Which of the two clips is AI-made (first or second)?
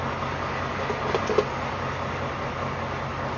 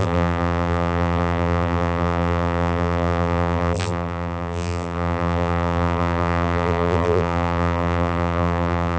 second